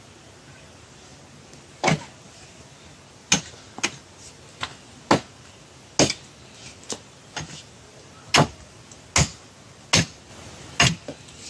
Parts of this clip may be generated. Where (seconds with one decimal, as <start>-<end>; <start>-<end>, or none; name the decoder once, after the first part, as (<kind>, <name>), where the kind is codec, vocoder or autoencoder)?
none